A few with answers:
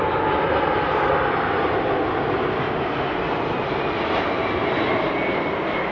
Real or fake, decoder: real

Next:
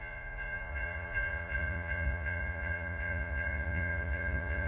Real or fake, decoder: fake, vocoder, Vocos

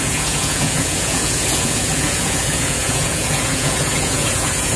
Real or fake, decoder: fake, vocoder, Vocos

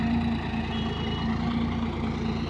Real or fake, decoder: real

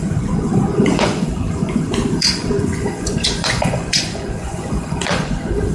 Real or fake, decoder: fake, vocoder, Vocos